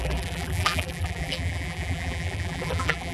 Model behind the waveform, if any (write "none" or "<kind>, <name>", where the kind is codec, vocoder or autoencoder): vocoder, BigVGAN v2